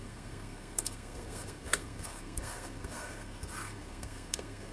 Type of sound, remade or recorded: remade